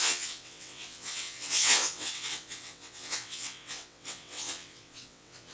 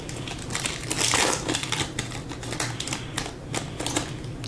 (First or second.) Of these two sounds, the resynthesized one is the first